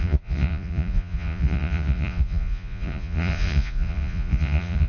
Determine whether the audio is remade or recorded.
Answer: remade